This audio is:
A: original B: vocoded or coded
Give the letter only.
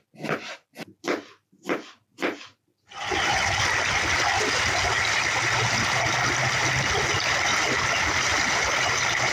A